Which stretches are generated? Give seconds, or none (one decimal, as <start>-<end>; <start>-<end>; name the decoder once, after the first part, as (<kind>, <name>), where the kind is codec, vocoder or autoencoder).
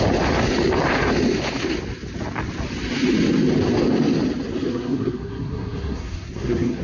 4.7-6.8 (codec, SNAC)